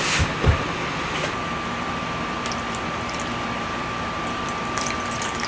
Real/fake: real